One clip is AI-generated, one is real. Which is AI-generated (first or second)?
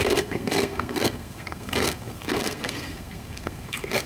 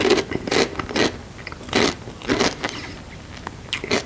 first